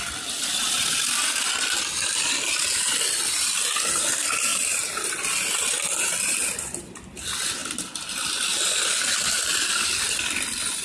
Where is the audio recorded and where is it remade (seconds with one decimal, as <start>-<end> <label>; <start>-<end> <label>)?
0.0-10.8 recorded